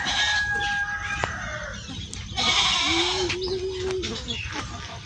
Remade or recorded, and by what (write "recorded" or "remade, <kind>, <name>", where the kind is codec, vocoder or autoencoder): recorded